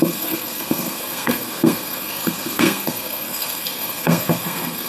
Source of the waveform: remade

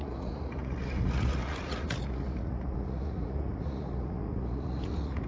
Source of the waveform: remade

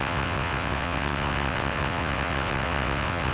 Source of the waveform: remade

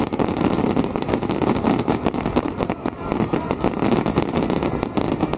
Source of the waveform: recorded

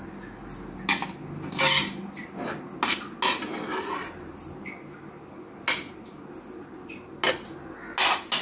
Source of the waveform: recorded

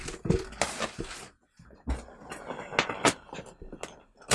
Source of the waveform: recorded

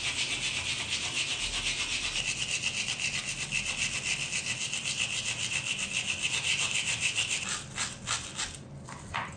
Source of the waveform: recorded